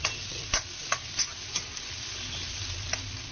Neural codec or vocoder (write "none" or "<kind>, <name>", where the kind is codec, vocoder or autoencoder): none